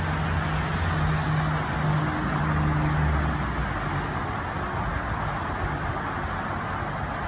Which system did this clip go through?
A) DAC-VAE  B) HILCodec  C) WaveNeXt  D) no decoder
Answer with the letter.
D